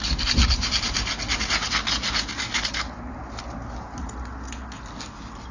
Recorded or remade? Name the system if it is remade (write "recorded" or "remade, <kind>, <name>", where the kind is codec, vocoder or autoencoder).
recorded